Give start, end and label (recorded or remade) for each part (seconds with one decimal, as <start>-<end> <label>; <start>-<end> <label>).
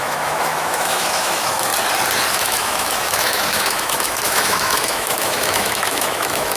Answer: 0.0-1.7 remade; 1.7-2.3 recorded; 2.3-6.6 remade